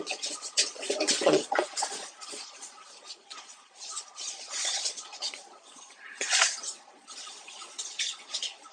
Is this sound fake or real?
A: fake